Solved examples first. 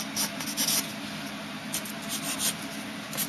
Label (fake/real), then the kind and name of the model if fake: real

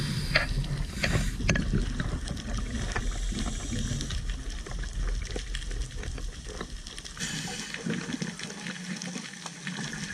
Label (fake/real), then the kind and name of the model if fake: real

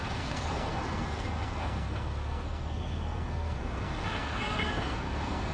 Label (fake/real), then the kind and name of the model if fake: fake, codec, SNAC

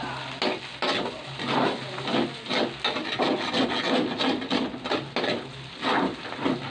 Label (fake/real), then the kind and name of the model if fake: real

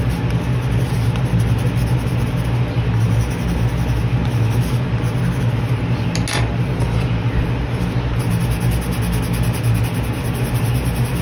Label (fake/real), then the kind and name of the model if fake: real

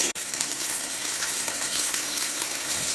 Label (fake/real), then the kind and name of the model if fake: fake, codec, SNAC